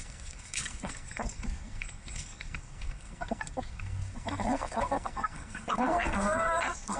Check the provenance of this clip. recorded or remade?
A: remade